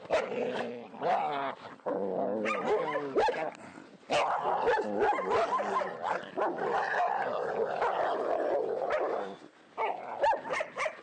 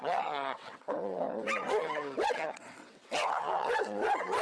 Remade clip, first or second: second